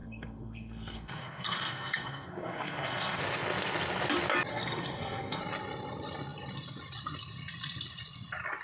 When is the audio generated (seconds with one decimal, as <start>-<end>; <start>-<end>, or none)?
0.0-3.2; 4.5-5.4

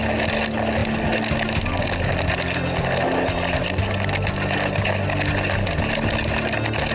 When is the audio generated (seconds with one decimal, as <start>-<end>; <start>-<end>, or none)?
none

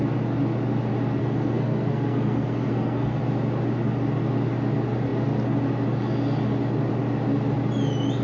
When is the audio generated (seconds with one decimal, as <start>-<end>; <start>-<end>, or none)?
1.2-3.2

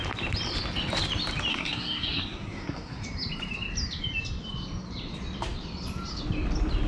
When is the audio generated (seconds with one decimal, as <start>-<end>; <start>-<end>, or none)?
1.5-3.0

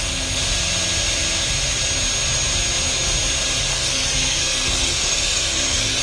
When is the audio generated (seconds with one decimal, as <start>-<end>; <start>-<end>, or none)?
3.7-6.0

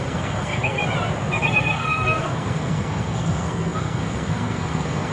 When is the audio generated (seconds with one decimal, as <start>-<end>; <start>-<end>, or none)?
0.0-0.8; 1.3-5.1

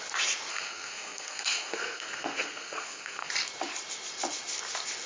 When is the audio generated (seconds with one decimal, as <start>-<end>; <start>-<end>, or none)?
0.5-3.3

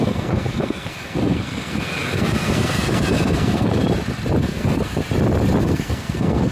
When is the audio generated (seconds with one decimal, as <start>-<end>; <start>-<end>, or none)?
0.0-3.8; 4.4-5.0; 5.6-6.5